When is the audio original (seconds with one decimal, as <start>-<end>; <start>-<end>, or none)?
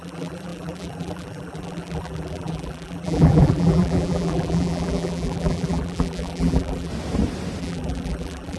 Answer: 6.9-7.6